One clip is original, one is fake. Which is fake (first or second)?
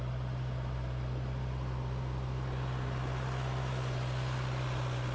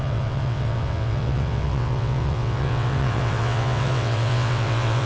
second